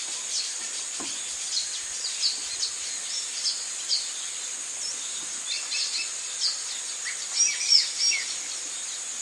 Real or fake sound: real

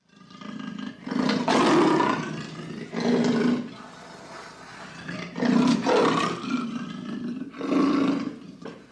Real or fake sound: real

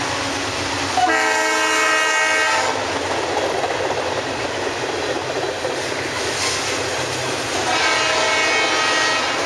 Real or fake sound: real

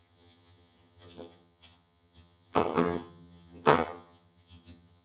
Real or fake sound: fake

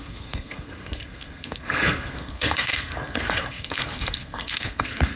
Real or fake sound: fake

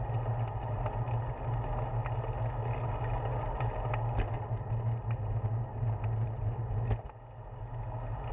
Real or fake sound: real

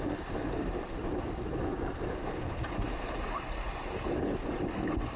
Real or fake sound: real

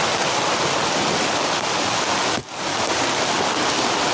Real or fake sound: real